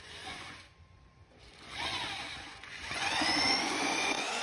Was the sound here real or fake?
fake